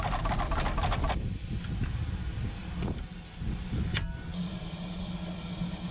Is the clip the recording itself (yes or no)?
yes